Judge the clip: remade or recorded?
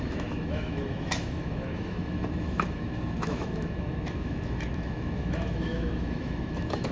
remade